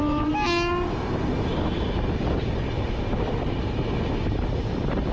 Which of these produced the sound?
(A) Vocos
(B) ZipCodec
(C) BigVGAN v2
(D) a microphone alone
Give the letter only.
D